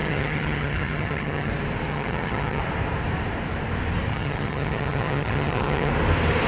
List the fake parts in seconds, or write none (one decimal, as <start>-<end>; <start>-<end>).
0.0-1.5; 1.9-2.6; 4.1-5.9

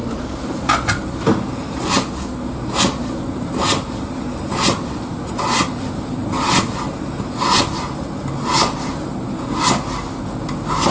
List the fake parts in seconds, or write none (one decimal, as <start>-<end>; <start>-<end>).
none

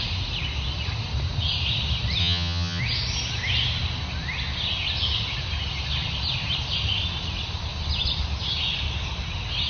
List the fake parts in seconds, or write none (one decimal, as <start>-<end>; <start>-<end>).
2.2-2.8

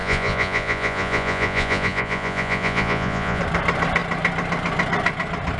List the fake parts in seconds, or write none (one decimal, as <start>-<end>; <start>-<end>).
0.0-3.4

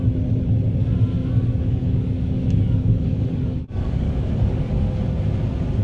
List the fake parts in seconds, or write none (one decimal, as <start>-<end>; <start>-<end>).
1.2-4.7

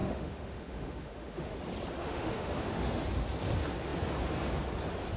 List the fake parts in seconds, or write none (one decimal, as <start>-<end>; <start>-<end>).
0.0-1.6; 2.0-3.0

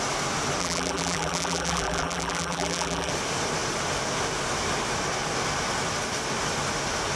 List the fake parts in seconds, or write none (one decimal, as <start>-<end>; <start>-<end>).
0.6-3.1